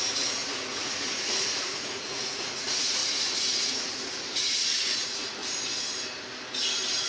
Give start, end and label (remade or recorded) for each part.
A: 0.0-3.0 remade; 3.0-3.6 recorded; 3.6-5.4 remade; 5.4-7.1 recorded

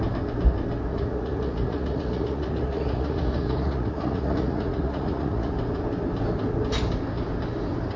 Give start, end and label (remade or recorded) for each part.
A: 0.0-0.9 recorded; 0.9-5.5 remade; 5.5-8.0 recorded

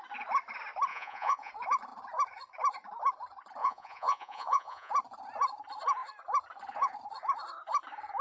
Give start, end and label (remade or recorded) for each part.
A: 0.0-0.9 recorded; 0.9-1.5 remade; 1.5-3.6 recorded; 3.6-4.9 remade; 4.9-8.2 recorded

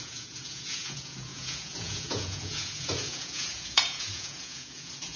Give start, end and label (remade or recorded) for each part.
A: 0.0-5.2 remade

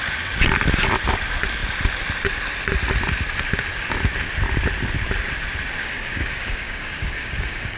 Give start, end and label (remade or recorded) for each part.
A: 0.0-5.8 recorded; 5.8-7.8 remade

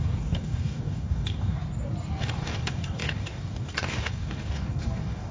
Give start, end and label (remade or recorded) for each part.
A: 0.0-1.6 remade; 1.6-2.2 recorded; 2.2-5.3 remade

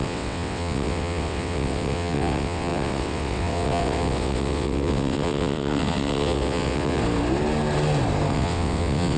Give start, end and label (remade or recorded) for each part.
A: 0.0-7.0 remade; 7.0-8.3 recorded; 8.3-9.2 remade